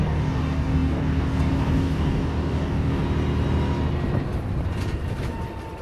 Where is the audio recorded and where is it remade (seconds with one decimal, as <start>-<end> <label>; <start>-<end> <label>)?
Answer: 0.0-3.0 remade; 3.0-5.8 recorded